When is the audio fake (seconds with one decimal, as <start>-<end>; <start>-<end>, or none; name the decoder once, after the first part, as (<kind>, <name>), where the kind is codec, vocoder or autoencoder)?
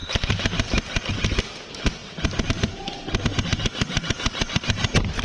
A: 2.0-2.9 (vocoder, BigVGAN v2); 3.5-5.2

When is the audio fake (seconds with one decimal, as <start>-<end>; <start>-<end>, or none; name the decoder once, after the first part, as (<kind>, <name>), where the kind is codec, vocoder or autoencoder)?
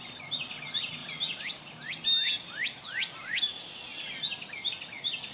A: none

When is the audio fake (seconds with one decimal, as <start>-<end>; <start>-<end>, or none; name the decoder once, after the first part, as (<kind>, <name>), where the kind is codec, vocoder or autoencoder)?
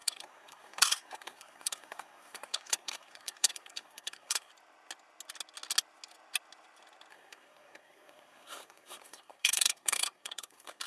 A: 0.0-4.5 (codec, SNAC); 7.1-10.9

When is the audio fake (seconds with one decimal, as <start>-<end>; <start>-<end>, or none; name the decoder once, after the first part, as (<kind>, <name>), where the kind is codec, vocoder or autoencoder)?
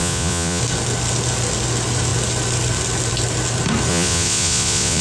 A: 0.0-0.6 (vocoder, Vocos); 3.9-5.0